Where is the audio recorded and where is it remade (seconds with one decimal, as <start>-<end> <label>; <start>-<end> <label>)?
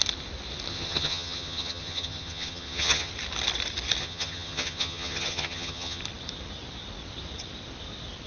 0.0-0.7 recorded; 0.7-3.1 remade; 3.1-4.0 recorded; 4.0-6.0 remade; 6.0-8.3 recorded